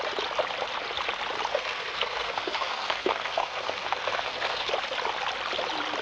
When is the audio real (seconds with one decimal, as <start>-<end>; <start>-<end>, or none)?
0.0-1.5; 4.7-6.0